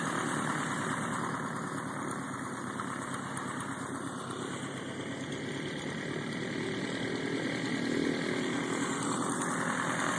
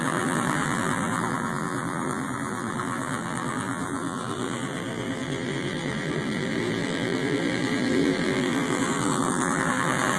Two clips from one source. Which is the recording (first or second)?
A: first